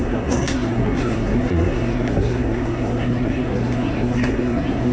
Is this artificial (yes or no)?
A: yes